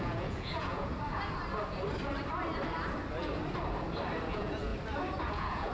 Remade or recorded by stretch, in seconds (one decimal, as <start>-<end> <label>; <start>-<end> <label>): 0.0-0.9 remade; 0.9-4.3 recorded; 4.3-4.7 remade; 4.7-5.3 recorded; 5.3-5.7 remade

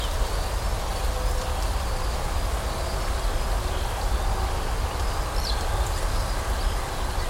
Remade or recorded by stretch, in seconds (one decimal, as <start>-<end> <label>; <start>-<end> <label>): 0.0-7.3 recorded

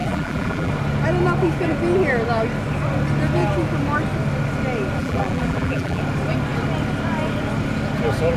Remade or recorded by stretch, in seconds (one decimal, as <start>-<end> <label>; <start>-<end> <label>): 0.0-0.7 remade; 0.7-5.0 recorded; 5.0-6.0 remade; 6.0-8.4 recorded